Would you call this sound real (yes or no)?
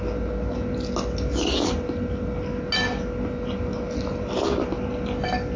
yes